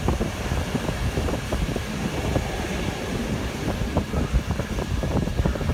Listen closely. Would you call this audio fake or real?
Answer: real